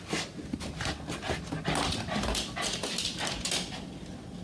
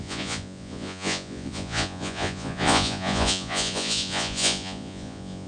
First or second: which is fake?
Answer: second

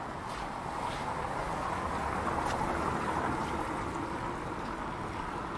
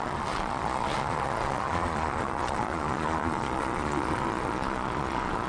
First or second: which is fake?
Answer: second